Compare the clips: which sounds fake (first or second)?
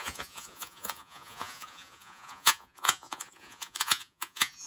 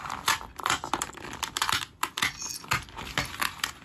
first